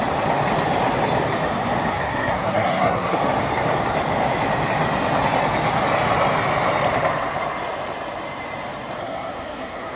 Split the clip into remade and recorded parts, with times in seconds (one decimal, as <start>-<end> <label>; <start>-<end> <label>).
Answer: 0.0-1.9 recorded; 1.9-3.2 remade; 3.2-9.0 recorded; 9.0-10.0 remade